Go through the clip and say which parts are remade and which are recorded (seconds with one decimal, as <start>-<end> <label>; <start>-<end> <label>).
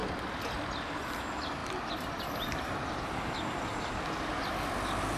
0.0-5.2 recorded